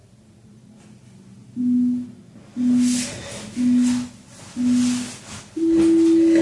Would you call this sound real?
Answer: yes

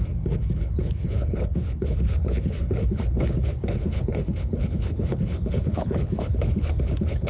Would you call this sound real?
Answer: no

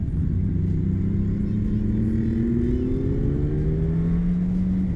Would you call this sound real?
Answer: yes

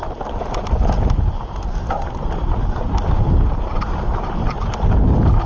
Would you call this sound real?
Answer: yes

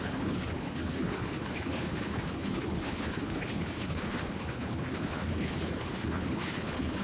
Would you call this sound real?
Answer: no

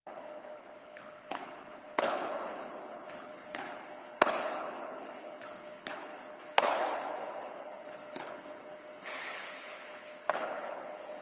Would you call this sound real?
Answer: no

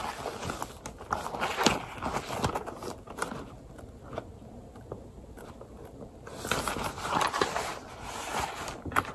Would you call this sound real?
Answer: yes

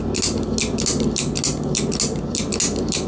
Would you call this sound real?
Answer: yes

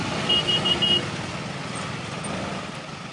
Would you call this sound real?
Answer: yes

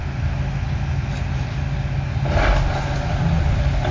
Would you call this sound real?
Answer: yes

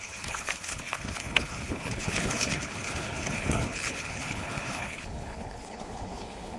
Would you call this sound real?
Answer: no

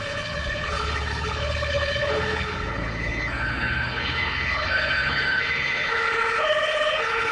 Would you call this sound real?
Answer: no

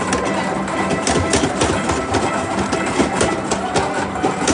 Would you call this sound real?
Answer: yes